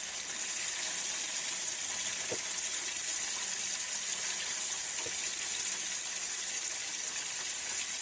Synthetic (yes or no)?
no